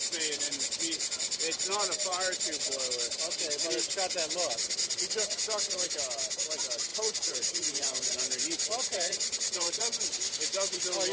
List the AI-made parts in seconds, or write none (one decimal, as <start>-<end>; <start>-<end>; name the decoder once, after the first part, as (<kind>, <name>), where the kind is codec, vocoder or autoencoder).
6.9-8.1 (vocoder, Vocos); 8.9-9.8